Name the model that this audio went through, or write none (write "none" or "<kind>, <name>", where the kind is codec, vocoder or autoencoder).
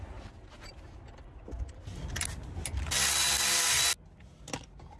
none